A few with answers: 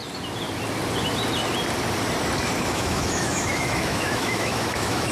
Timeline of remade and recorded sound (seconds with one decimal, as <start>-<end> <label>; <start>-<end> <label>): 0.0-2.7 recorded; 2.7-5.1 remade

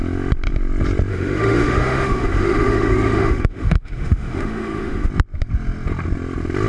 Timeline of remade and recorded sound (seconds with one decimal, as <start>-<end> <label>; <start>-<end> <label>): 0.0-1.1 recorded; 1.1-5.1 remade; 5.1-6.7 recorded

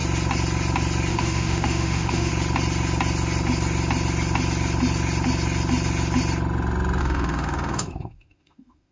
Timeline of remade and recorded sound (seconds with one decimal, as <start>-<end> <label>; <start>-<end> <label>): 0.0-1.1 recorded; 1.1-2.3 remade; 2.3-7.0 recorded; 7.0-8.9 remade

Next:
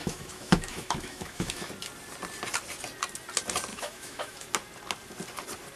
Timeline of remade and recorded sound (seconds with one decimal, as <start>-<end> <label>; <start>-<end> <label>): 0.0-1.7 remade; 1.7-3.7 recorded; 3.7-4.5 remade; 4.5-5.8 recorded